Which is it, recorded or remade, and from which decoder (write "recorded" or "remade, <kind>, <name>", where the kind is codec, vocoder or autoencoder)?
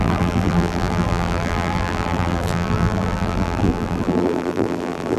remade, vocoder, BigVGAN v2